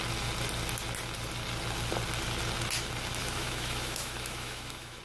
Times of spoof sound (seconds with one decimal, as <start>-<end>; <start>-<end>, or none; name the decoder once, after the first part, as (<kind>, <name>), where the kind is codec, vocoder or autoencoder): 3.2-5.0 (autoencoder, DAC-VAE)